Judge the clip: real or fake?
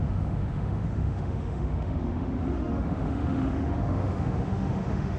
fake